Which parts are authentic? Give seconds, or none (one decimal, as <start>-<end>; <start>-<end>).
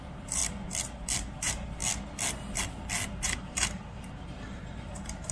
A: 0.4-1.3; 1.8-3.2